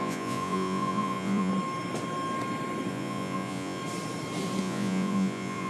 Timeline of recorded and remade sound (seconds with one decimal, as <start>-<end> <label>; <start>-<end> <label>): 0.0-1.5 remade; 1.5-2.9 recorded; 2.9-3.8 remade; 3.8-4.6 recorded; 4.6-5.7 remade